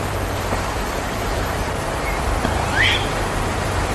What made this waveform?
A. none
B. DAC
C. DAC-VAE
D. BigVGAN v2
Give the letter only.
D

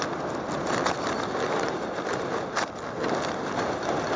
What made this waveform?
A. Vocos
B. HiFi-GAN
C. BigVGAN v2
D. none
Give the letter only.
D